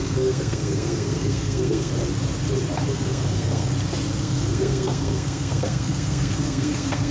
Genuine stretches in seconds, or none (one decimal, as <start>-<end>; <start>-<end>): 1.9-2.9; 3.7-4.2